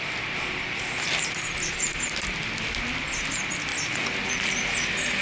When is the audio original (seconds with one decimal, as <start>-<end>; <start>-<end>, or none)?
0.0-5.2